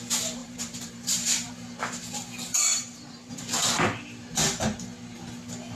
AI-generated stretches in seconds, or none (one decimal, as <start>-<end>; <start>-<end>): 0.4-1.5; 2.7-3.3